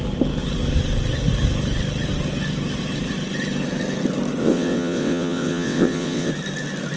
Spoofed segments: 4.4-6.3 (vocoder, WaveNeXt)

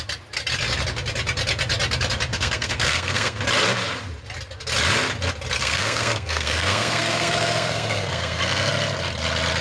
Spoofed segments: 2.3-3.4 (codec, SNAC); 5.6-8.7

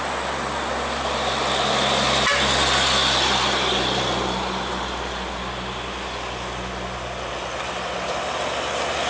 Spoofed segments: none

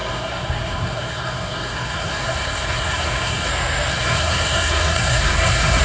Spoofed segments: 0.0-3.5 (codec, SNAC); 3.9-5.8

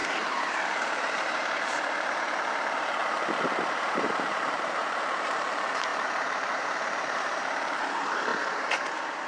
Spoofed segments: 0.0-8.3 (vocoder, BigVGAN v2)

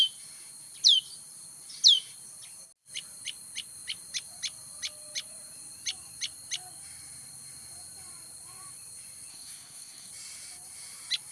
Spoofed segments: 9.3-10.1 (codec, SNAC)

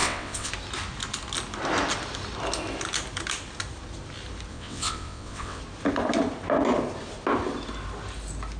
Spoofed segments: 0.0-0.5 (vocoder, WaveNeXt); 4.5-5.6

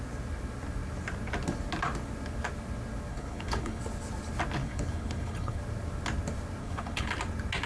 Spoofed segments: 3.1-3.8 (codec, HILCodec); 4.6-5.6; 6.6-7.1